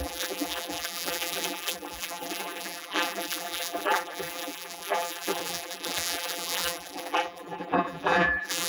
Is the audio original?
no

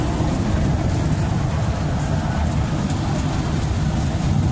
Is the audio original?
yes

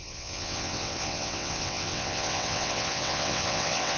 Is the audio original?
no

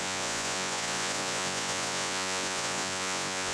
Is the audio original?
no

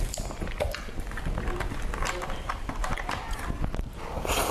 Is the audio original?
yes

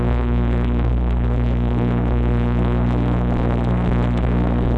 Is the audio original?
no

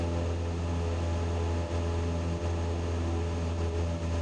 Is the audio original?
yes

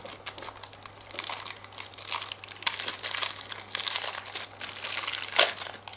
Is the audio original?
yes